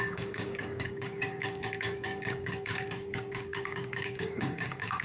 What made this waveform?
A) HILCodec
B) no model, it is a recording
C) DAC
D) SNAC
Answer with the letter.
C